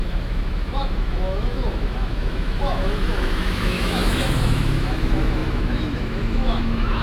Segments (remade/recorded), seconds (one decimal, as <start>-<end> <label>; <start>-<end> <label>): 0.0-7.0 remade